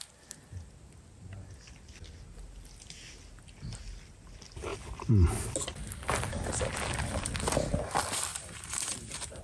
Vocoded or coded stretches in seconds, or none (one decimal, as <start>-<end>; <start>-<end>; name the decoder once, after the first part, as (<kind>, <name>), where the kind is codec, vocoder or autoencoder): 8.3-9.4 (vocoder, BigVGAN v2)